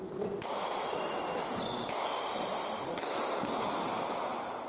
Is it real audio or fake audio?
real